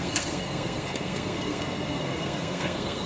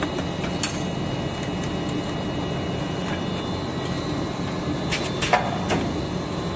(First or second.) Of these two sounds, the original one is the second